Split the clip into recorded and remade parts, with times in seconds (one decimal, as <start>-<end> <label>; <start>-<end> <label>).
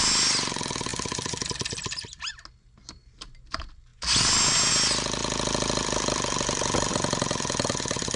0.0-8.2 recorded